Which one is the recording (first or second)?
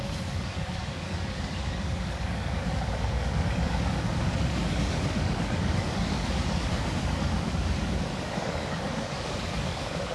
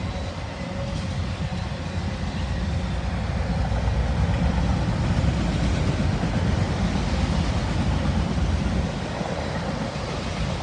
second